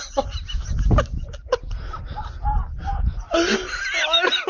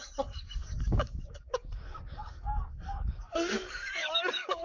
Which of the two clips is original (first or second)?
first